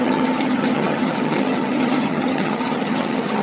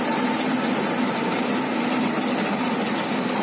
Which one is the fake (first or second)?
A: first